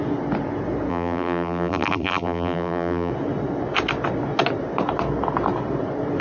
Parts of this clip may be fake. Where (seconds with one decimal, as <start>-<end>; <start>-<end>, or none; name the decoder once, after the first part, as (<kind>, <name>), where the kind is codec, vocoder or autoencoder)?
0.9-3.1 (vocoder, BigVGAN v2)